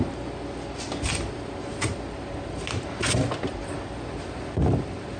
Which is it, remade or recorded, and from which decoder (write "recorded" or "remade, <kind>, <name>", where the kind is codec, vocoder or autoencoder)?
recorded